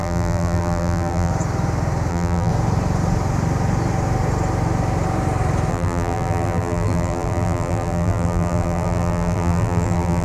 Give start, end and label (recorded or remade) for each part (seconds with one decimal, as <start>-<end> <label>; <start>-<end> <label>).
0.0-1.3 remade; 1.3-2.1 recorded; 2.1-2.5 remade; 2.5-5.7 recorded; 5.7-10.2 remade